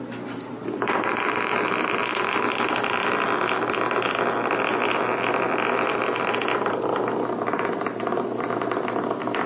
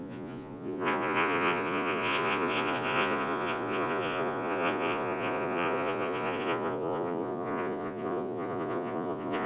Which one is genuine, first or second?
first